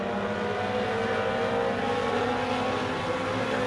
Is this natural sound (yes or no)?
yes